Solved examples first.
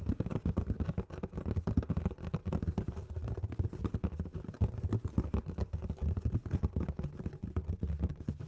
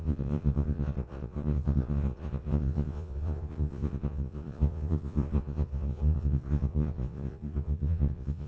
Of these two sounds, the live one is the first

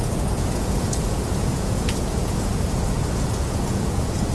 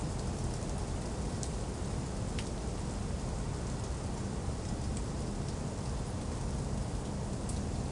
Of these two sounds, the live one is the second